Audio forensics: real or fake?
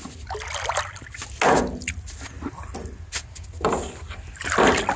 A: real